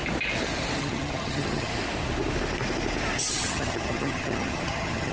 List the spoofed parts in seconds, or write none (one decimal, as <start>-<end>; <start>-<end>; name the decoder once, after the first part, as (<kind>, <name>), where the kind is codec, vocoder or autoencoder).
0.8-1.7 (vocoder, HiFi-GAN); 3.3-5.1